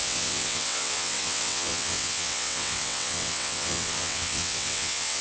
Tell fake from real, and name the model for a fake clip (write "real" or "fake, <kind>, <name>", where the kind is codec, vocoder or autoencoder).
fake, vocoder, WaveNeXt